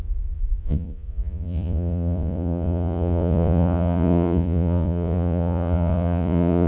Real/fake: fake